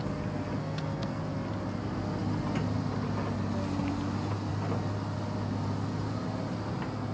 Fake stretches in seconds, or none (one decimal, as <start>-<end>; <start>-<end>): 0.6-1.2